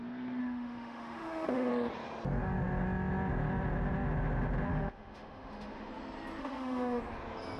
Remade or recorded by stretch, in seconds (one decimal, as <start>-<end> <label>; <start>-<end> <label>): 0.0-0.4 recorded; 0.4-1.7 remade; 1.7-4.7 recorded; 4.7-5.9 remade; 5.9-6.4 recorded; 6.4-7.0 remade; 7.0-7.6 recorded